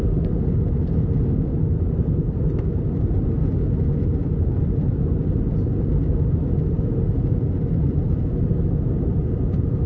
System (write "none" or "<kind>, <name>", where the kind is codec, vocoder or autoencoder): none